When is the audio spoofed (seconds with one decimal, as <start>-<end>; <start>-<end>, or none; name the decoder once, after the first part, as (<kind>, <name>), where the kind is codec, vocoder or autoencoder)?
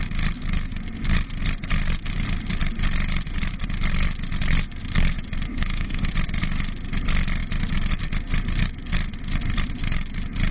5.5-6.1 (autoencoder, DAC-VAE)